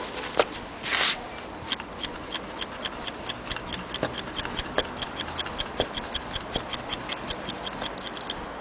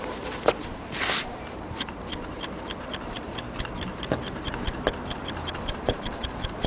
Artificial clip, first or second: second